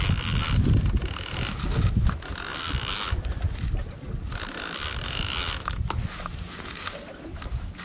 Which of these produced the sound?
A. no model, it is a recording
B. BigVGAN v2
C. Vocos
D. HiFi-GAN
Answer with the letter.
A